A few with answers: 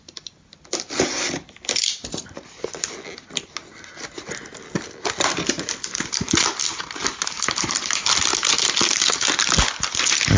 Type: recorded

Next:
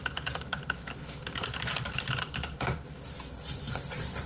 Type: recorded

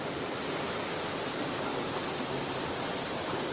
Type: recorded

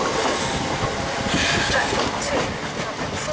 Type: recorded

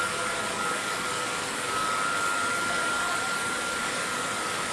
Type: remade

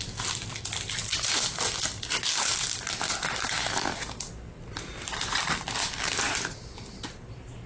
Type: recorded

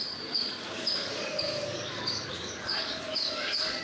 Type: remade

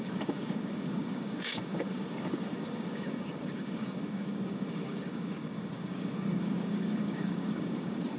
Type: remade